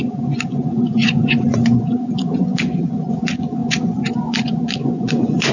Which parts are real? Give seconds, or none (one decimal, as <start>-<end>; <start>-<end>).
none